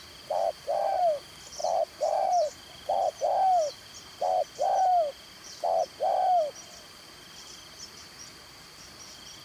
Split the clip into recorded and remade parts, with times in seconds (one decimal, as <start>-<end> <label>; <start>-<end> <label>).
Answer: 0.0-1.6 recorded; 1.6-3.1 remade; 3.1-9.4 recorded